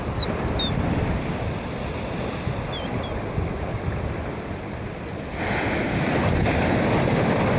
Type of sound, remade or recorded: recorded